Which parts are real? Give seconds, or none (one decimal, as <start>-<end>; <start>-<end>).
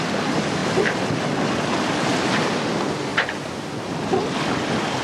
none